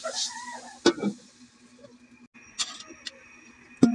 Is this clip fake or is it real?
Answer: real